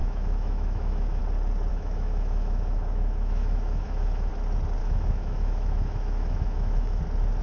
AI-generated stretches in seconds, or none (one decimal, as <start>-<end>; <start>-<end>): 0.0-1.2; 1.7-4.3; 4.8-7.0